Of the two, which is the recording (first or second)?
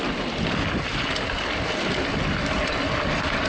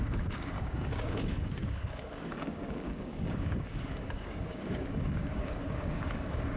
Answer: first